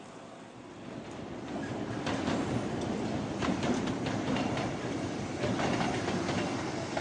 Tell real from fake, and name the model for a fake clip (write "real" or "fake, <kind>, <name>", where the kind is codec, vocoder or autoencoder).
real